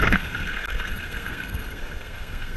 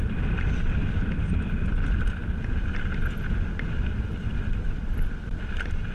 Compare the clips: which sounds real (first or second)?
second